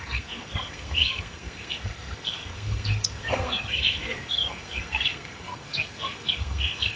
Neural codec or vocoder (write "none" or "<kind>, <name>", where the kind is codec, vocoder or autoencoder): codec, SNAC